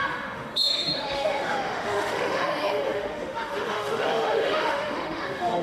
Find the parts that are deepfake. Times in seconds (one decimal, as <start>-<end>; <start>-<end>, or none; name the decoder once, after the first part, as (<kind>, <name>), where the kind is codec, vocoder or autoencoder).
0.0-5.6 (autoencoder, DAC-VAE)